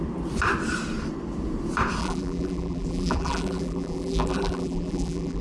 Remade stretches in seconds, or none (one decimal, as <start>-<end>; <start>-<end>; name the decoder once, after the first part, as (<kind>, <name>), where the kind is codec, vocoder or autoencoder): 2.0-5.4 (vocoder, BigVGAN v2)